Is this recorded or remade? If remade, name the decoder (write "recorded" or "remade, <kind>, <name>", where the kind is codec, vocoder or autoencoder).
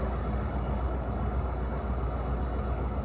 remade, codec, DAC